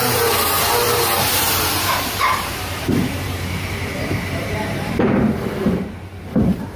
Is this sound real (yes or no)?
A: no